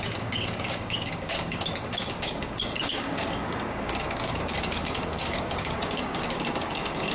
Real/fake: fake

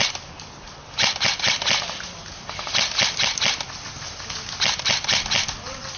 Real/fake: real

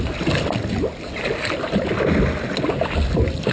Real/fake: real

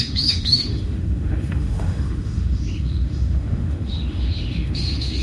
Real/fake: fake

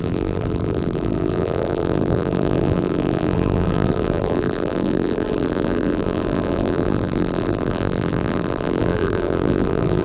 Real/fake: fake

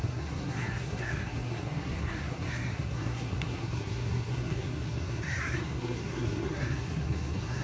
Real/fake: fake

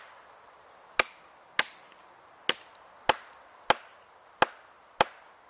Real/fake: real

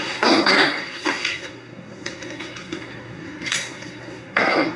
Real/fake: fake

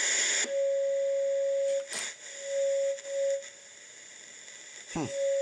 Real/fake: real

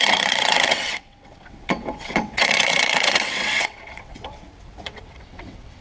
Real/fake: fake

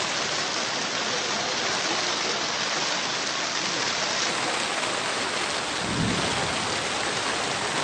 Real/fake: real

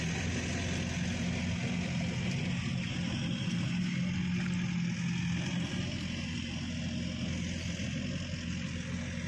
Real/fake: real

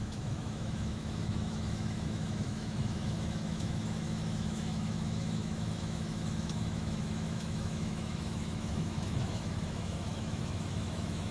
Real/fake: fake